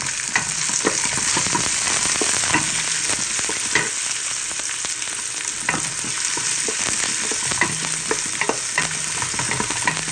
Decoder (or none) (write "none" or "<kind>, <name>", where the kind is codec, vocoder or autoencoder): none